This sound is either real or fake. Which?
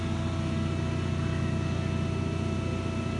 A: real